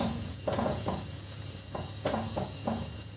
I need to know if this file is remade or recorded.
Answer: remade